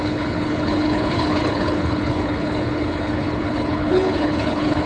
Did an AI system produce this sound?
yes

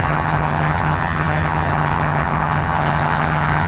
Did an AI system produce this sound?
yes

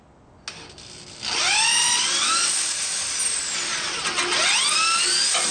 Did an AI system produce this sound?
no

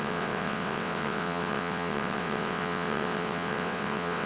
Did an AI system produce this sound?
yes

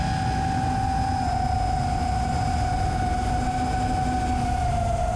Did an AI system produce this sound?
no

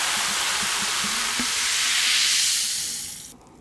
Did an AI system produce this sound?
no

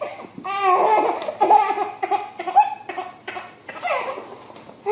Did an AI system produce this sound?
no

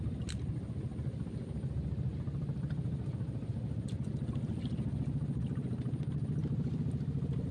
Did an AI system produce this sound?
no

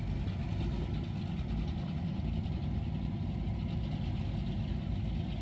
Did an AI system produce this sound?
no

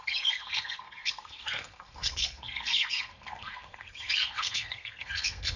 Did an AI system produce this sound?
yes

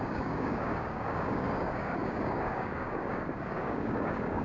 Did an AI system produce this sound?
yes